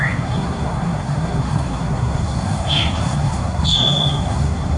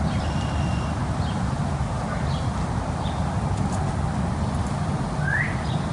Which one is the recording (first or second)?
second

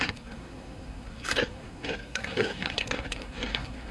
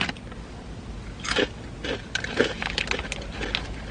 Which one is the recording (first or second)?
second